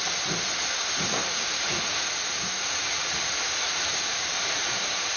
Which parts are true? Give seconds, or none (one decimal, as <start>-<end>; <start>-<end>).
0.0-1.2; 4.3-5.2